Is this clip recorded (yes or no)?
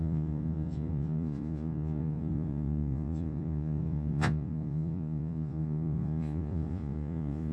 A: no